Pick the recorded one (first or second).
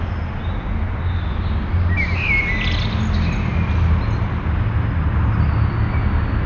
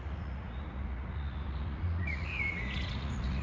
first